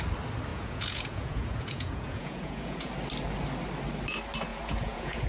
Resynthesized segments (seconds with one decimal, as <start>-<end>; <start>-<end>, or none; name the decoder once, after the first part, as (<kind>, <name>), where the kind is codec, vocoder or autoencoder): 0.5-2.9 (vocoder, Vocos); 4.5-5.3